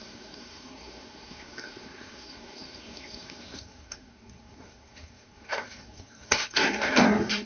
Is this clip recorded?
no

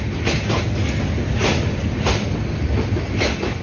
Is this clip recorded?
yes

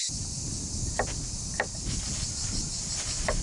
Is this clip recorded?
yes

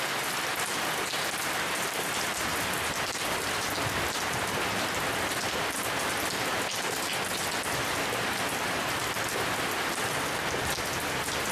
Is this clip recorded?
yes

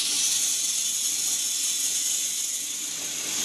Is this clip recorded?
yes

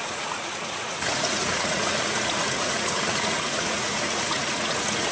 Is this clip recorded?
no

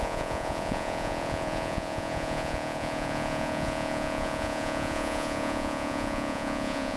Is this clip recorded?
no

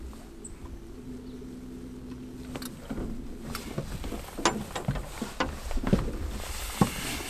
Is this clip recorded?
yes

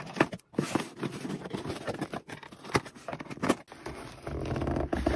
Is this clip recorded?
yes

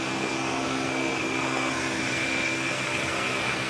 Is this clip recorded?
no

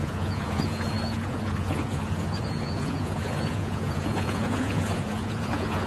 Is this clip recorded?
no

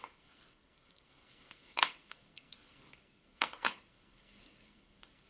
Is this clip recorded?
no